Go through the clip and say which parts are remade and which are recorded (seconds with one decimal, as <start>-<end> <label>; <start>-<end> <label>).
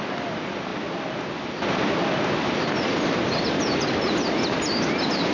0.0-5.3 recorded